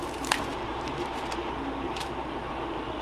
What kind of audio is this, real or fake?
fake